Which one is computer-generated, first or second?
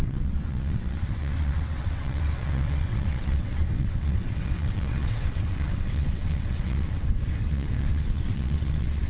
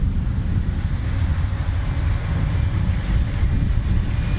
first